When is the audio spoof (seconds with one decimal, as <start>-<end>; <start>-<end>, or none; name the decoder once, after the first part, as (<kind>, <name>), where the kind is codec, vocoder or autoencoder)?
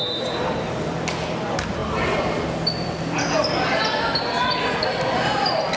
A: none